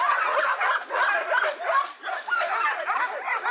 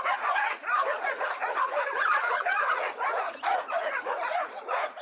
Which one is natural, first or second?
first